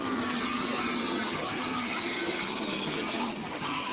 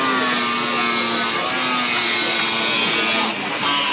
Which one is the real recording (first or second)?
second